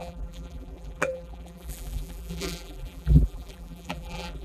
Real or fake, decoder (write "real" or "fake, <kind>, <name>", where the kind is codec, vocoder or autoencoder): fake, vocoder, BigVGAN v2